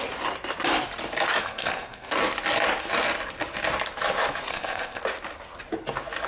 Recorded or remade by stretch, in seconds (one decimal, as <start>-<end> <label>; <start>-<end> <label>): 0.0-1.4 recorded; 1.4-2.1 remade; 2.1-4.5 recorded; 4.5-5.0 remade; 5.0-6.3 recorded